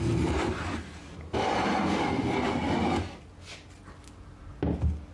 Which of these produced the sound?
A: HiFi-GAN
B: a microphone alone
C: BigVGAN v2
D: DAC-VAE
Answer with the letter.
B